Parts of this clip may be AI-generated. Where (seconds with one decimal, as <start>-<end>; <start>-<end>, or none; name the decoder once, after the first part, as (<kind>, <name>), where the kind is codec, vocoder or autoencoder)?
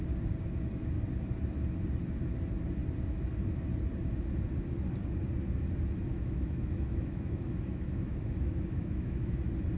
6.1-9.3 (autoencoder, DAC-VAE)